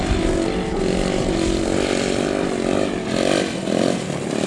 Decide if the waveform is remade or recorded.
recorded